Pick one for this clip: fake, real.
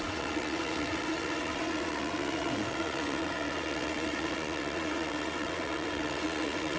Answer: fake